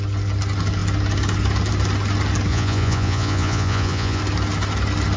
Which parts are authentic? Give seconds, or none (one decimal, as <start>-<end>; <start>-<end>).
0.0-2.5; 4.2-5.2